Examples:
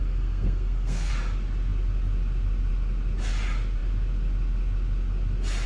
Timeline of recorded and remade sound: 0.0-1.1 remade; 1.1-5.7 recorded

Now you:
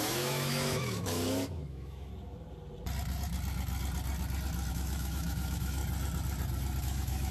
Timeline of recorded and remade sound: 0.0-2.1 remade; 2.1-4.7 recorded; 4.7-5.8 remade; 5.8-6.8 recorded; 6.8-7.3 remade

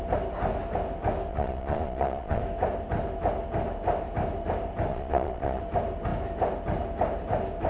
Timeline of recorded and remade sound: 0.0-1.3 recorded; 1.3-2.4 remade; 2.4-4.9 recorded; 4.9-5.6 remade; 5.6-7.7 recorded